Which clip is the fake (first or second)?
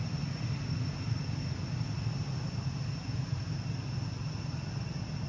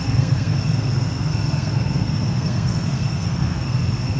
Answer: second